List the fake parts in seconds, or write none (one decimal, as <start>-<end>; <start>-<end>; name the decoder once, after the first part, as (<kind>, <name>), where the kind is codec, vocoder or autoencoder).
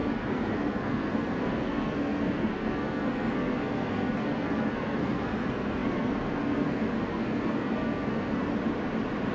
0.0-8.5 (codec, SNAC)